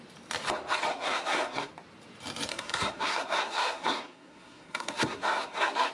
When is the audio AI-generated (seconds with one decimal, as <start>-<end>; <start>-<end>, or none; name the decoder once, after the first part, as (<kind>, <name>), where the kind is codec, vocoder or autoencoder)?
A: 0.9-1.7 (codec, SNAC); 2.5-5.9